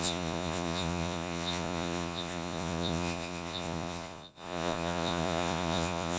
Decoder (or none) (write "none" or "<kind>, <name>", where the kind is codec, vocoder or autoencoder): vocoder, Vocos